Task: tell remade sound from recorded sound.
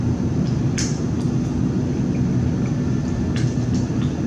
remade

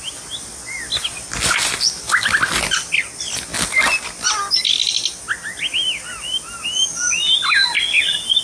recorded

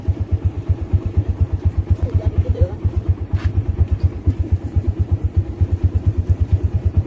remade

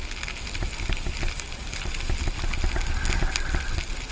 recorded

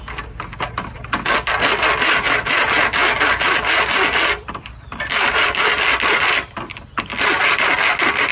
recorded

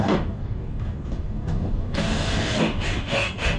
remade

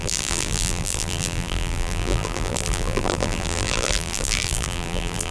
remade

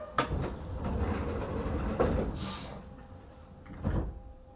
recorded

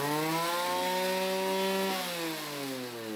recorded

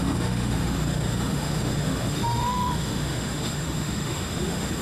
remade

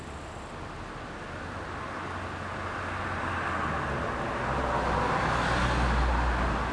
recorded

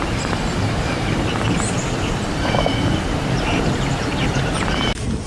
remade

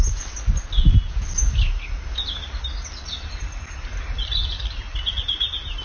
recorded